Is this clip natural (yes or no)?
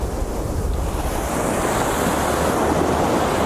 yes